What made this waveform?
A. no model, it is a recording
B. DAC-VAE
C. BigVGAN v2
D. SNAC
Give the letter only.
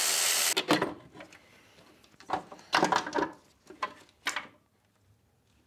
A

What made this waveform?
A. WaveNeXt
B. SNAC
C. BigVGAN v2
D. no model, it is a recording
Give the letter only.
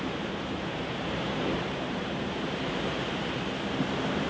C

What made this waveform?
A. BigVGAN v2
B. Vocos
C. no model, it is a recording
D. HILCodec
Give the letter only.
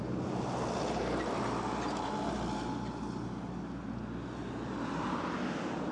C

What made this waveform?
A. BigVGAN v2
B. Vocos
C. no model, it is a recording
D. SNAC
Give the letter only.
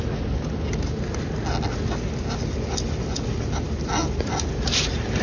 C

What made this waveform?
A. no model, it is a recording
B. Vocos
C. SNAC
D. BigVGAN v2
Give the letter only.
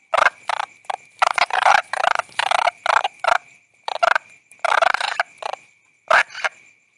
D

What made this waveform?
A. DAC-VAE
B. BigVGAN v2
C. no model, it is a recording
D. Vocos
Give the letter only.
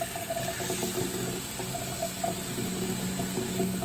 C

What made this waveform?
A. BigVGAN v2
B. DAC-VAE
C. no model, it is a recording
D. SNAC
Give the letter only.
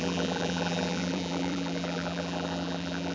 A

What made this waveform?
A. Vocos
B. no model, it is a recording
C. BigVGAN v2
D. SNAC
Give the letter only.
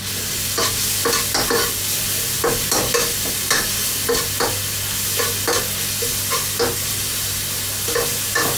B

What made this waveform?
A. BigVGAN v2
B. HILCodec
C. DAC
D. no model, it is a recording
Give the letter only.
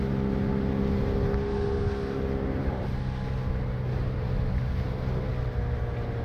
D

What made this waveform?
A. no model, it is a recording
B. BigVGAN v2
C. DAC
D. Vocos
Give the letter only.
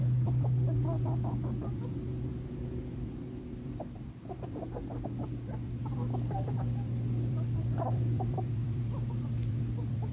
B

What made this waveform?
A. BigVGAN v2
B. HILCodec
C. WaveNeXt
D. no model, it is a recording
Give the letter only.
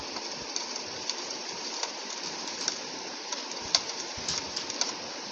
A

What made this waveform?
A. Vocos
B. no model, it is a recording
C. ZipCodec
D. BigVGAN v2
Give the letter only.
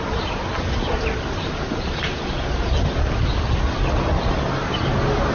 B